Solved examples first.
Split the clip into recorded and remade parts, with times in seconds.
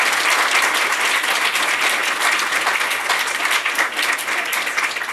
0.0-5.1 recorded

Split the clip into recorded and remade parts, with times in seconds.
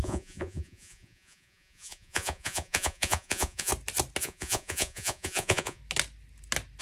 0.0-3.7 remade; 3.7-4.2 recorded; 4.2-5.8 remade; 5.8-6.8 recorded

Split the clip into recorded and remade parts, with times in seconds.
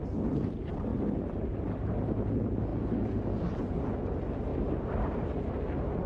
0.0-0.9 recorded; 0.9-2.3 remade; 2.3-4.5 recorded; 4.5-5.6 remade; 5.6-6.1 recorded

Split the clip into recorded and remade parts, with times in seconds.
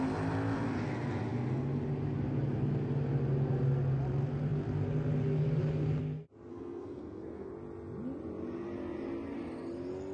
0.0-6.5 recorded; 6.5-7.5 remade; 7.5-10.1 recorded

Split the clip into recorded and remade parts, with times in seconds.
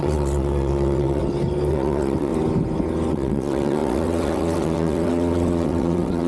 0.0-1.2 remade; 1.2-1.7 recorded; 1.7-2.3 remade; 2.3-3.1 recorded; 3.1-6.3 remade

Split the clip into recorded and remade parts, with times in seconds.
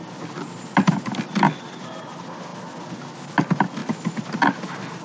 0.0-5.0 recorded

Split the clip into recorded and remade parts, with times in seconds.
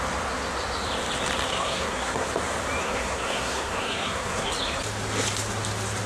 0.0-1.5 recorded; 1.5-2.3 remade; 2.3-2.8 recorded; 2.8-4.5 remade; 4.5-6.1 recorded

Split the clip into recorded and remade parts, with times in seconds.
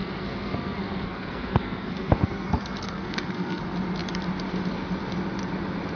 0.0-3.6 remade; 3.6-6.0 recorded